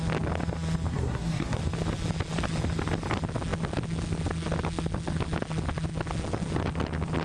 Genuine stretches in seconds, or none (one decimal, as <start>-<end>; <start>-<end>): 0.0-0.9; 1.6-7.2